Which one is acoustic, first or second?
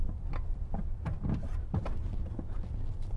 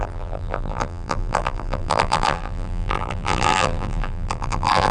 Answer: first